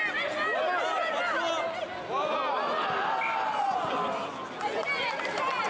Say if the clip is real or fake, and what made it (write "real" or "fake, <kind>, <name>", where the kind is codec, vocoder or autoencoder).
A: real